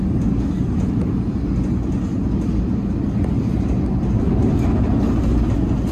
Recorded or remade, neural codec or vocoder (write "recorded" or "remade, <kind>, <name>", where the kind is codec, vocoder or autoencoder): recorded